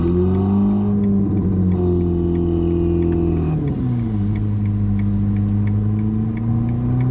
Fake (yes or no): no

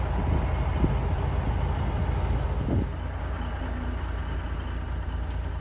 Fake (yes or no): no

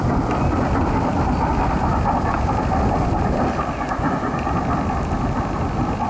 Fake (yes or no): no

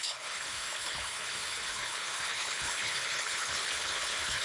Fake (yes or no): yes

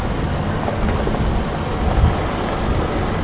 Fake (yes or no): no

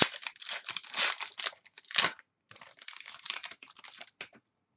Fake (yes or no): no